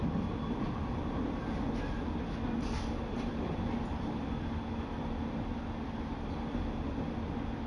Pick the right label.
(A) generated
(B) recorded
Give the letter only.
B